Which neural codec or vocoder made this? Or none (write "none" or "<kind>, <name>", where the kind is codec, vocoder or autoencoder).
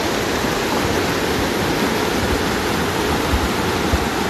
none